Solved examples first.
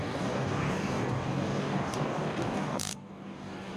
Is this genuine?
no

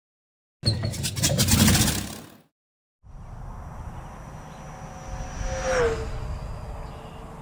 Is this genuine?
yes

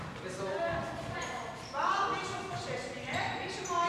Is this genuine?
yes